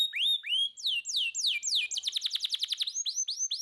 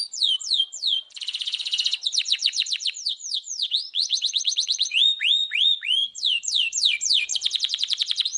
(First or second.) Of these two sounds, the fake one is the second